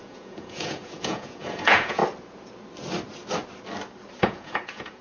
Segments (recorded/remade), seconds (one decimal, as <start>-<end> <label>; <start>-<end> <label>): 0.0-2.0 remade; 2.0-4.2 recorded; 4.2-5.0 remade